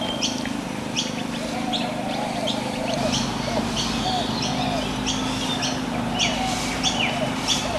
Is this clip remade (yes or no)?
no